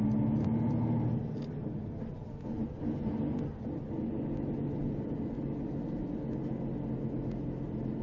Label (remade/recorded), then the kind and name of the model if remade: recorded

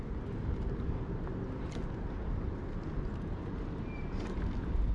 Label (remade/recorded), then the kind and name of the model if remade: recorded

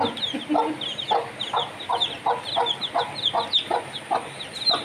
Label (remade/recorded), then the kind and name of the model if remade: recorded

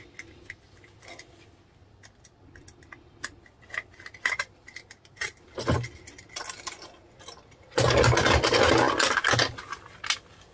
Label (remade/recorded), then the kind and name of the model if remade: recorded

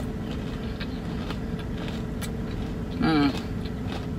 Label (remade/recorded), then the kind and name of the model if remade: recorded